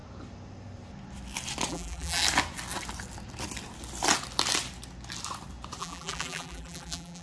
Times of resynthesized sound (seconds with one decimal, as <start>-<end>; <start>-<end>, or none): 1.7-2.2; 5.8-7.2

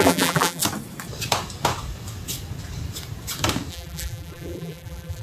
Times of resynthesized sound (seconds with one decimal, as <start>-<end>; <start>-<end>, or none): 0.0-0.6; 3.7-5.2

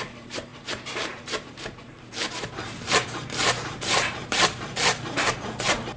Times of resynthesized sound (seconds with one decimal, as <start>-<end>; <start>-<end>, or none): 0.0-6.0

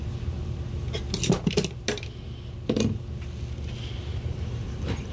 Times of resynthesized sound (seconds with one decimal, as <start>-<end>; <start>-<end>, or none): 4.1-5.1